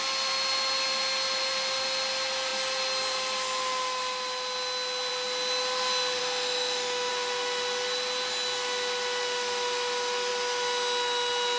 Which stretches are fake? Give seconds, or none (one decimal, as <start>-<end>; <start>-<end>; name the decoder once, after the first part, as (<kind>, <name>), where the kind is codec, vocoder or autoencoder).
6.2-7.1 (autoencoder, DAC-VAE)